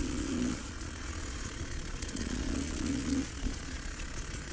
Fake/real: fake